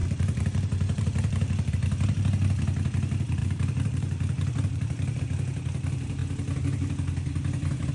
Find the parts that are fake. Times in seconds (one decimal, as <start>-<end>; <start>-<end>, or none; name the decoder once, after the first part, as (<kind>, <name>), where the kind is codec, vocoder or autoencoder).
0.0-1.7 (vocoder, BigVGAN v2); 3.4-5.2